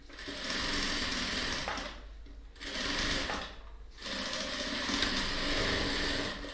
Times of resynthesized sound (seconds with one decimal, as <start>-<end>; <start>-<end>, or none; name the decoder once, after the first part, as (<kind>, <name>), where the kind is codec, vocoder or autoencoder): none